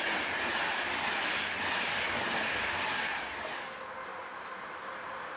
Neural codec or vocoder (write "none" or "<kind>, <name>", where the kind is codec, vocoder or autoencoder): none